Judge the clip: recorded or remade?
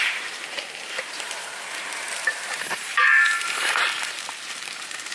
remade